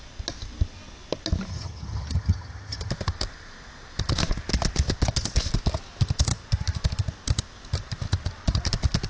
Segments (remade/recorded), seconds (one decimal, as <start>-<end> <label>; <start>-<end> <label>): 0.0-1.5 recorded; 1.5-2.9 remade; 2.9-9.1 recorded